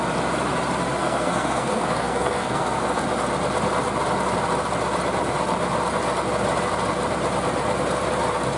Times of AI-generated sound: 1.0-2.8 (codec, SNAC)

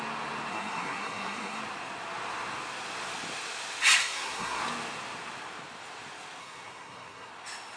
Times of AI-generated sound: 0.5-1.6 (codec, SNAC); 4.0-4.6; 6.4-7.3

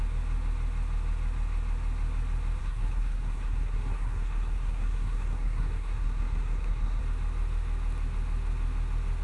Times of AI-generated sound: 2.6-7.0 (codec, SNAC)